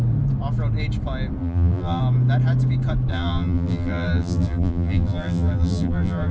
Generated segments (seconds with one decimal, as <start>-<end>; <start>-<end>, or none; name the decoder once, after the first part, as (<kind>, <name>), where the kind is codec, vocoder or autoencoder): 1.4-2.0 (vocoder, BigVGAN v2); 3.1-6.3